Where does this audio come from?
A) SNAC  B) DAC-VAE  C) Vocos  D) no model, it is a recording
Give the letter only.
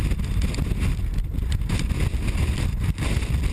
D